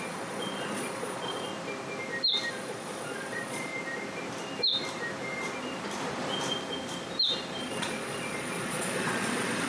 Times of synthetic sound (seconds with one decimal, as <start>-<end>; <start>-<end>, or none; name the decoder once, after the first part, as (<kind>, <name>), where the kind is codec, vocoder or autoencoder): 0.0-1.5 (vocoder, Vocos); 2.5-3.7; 7.6-9.7